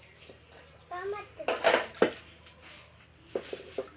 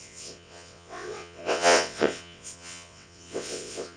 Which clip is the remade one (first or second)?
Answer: second